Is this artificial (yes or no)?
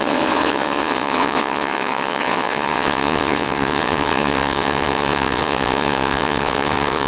yes